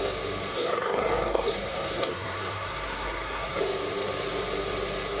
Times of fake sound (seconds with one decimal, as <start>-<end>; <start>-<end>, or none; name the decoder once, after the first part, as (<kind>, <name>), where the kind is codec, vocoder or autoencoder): 0.5-3.6 (codec, SNAC)